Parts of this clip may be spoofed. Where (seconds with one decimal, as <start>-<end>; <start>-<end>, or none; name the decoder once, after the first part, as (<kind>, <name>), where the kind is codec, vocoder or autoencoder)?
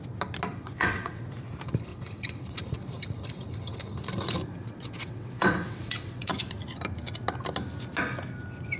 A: 0.5-1.2 (vocoder, WaveNeXt); 1.9-2.6; 4.5-6.3